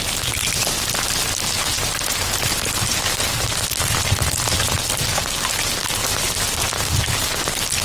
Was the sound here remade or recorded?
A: recorded